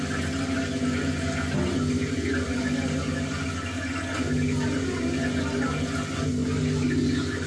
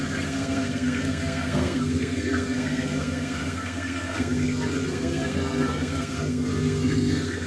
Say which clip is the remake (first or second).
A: second